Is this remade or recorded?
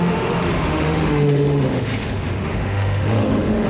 remade